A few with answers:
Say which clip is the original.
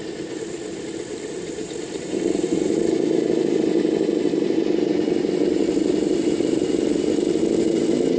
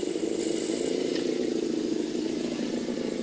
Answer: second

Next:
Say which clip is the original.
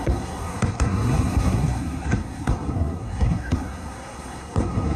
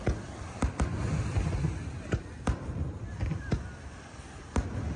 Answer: second